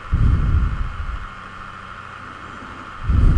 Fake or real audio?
real